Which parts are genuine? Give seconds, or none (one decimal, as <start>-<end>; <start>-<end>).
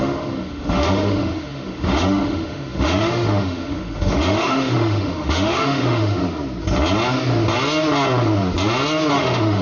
6.2-9.1